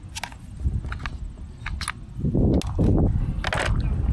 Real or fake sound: real